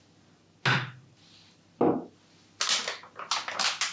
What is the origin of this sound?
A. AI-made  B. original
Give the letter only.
B